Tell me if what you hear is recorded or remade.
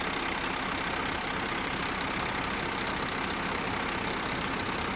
recorded